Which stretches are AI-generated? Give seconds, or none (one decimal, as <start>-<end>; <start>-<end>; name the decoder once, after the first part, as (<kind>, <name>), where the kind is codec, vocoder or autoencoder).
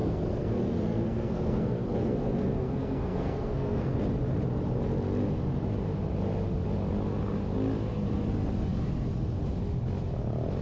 0.0-4.0 (codec, SNAC)